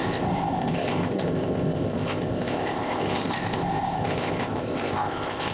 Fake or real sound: fake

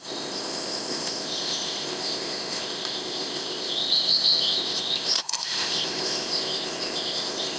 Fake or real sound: fake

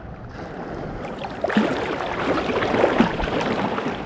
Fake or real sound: real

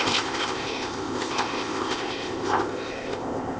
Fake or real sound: fake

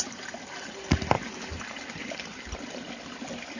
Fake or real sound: real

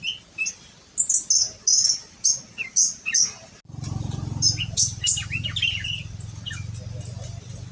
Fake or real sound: real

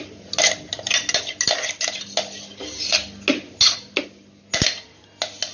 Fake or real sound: real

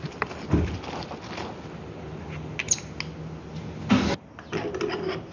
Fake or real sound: real